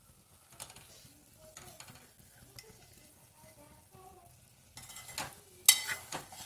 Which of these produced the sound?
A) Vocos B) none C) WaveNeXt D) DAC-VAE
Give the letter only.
B